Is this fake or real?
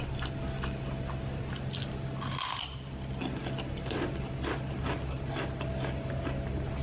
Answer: real